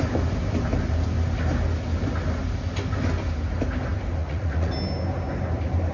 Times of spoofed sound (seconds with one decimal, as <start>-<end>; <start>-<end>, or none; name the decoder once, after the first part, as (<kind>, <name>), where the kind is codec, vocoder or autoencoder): 4.2-4.7 (vocoder, Vocos)